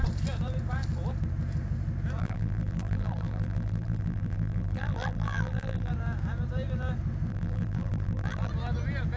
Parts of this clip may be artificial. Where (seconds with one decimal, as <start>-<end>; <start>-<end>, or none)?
2.2-5.9; 7.3-8.5

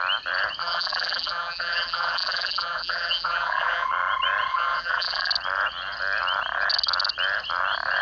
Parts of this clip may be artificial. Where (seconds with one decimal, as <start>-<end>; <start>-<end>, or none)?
0.6-3.9; 4.5-5.3

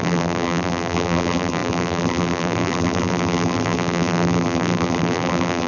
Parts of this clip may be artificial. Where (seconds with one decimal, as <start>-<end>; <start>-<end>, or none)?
0.0-5.7

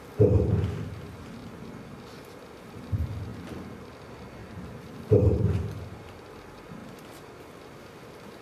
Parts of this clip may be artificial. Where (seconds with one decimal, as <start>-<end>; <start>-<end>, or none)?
4.4-5.7; 6.8-7.4